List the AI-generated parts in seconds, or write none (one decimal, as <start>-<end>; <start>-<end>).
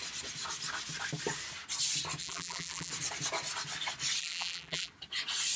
2.2-2.9; 4.2-4.9